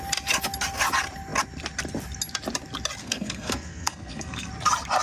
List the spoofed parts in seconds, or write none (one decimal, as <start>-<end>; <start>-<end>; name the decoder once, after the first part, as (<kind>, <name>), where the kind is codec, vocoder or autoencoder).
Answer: 3.0-4.5 (codec, SNAC)